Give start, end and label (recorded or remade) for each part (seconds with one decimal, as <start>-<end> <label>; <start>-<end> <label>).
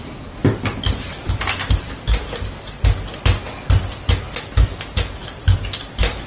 0.0-0.4 remade; 0.4-4.2 recorded; 4.2-6.3 remade